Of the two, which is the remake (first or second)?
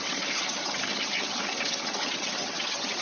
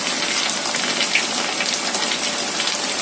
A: first